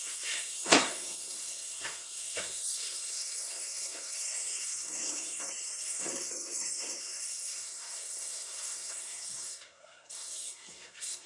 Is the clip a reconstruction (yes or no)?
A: yes